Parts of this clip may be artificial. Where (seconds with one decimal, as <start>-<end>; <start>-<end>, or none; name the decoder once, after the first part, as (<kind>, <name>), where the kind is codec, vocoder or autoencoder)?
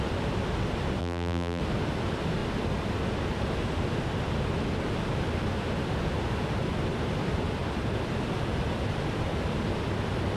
1.0-1.6 (vocoder, BigVGAN v2)